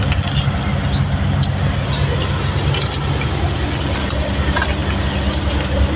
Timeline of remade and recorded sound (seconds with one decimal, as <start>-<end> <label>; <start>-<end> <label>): 0.0-6.0 recorded